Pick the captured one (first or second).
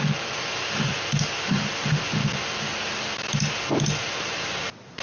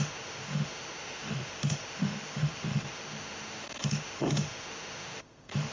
first